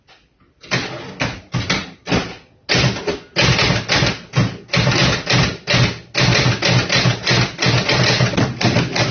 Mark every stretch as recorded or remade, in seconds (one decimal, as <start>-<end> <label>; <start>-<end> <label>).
0.0-9.1 recorded

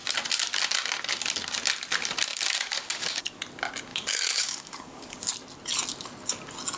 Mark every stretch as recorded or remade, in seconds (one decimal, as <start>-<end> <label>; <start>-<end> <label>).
0.0-2.3 recorded; 2.3-3.4 remade; 3.4-3.9 recorded; 3.9-5.3 remade; 5.3-6.8 recorded

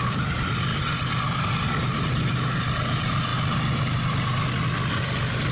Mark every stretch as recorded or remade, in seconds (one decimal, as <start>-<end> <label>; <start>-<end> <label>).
0.0-5.5 recorded

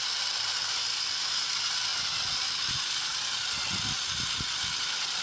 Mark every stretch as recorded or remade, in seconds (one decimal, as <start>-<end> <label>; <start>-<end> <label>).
0.0-5.2 recorded

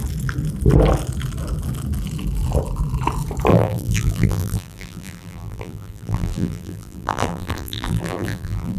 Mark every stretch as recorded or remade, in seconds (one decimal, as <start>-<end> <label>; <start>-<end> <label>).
0.0-3.5 recorded; 3.5-8.8 remade

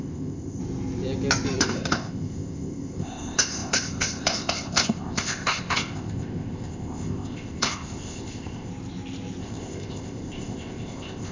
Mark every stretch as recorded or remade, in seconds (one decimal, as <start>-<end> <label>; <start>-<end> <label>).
0.0-0.6 remade; 0.6-1.6 recorded; 1.6-8.7 remade; 8.7-9.4 recorded; 9.4-11.3 remade

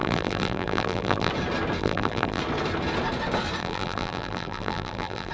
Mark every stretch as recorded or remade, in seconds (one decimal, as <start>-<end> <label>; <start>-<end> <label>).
0.0-1.3 remade; 1.3-1.8 recorded; 1.8-2.4 remade; 2.4-3.6 recorded; 3.6-5.3 remade